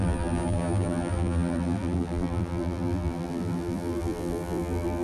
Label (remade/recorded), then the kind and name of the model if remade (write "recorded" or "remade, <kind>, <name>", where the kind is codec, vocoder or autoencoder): remade, vocoder, BigVGAN v2